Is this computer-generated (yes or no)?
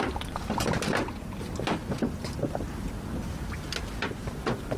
no